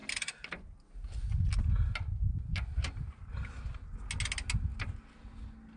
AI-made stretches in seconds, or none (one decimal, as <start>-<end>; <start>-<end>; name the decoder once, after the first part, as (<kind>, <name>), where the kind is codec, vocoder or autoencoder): none

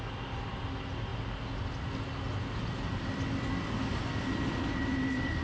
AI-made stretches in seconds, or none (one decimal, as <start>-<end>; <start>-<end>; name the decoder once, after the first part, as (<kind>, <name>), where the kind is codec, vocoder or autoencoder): none

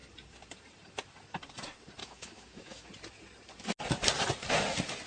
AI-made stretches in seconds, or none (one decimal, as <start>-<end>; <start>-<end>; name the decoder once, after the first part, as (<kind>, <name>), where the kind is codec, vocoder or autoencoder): 2.0-2.9 (autoencoder, DAC-VAE)

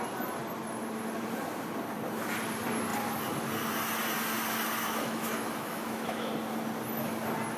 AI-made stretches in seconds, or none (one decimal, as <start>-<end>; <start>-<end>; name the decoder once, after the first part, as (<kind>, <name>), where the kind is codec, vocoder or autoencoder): 4.8-6.3 (autoencoder, DAC-VAE)

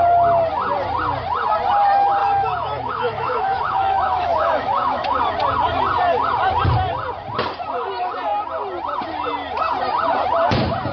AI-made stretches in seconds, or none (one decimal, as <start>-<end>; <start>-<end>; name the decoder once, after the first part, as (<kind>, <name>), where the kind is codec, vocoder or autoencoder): 2.2-5.2 (autoencoder, DAC-VAE)

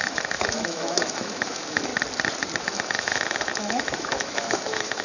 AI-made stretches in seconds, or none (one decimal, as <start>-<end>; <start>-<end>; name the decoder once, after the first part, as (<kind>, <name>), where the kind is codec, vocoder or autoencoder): 0.0-1.9 (autoencoder, DAC-VAE); 2.6-5.0

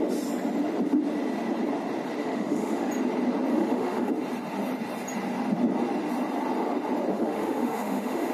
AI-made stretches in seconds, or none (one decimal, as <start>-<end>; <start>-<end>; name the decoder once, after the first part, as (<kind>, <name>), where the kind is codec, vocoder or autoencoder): 2.2-2.9 (autoencoder, DAC-VAE); 3.5-4.1; 7.1-8.3

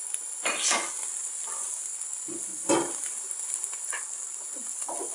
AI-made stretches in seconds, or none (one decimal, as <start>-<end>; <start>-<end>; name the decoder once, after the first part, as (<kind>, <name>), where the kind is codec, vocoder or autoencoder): none